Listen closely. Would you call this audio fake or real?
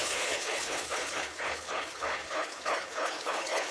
fake